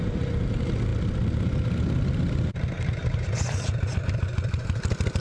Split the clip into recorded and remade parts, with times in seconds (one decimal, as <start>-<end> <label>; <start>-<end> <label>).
0.0-5.2 recorded